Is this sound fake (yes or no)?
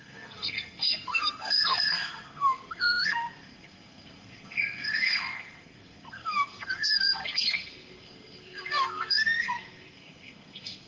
yes